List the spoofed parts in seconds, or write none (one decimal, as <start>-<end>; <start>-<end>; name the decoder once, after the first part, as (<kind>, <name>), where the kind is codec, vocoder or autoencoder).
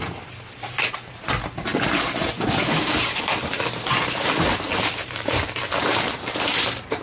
0.0-7.0 (vocoder, BigVGAN v2)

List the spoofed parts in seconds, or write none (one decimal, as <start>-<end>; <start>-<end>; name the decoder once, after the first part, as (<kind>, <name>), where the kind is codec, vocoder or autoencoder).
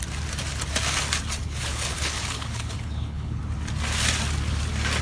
1.4-3.4 (codec, HILCodec)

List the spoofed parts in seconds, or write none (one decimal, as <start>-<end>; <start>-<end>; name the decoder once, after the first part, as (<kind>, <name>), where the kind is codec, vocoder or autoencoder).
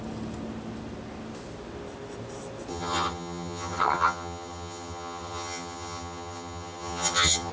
2.7-7.5 (vocoder, HiFi-GAN)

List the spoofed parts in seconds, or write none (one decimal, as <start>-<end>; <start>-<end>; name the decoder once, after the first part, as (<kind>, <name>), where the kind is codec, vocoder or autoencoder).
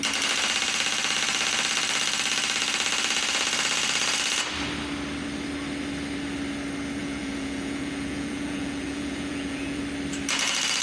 7.0-9.8 (vocoder, Vocos)